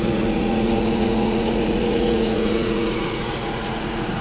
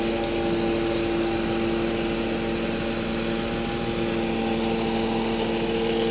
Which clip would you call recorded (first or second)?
second